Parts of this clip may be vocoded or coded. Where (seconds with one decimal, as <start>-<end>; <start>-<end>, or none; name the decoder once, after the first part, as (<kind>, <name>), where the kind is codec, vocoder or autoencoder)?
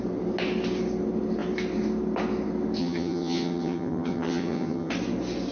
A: 2.8-4.9 (vocoder, HiFi-GAN)